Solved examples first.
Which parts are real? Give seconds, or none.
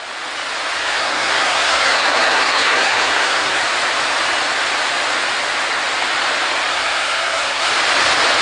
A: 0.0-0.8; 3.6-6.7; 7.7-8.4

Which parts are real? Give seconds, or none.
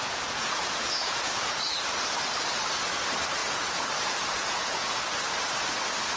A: 1.6-3.4; 5.0-6.2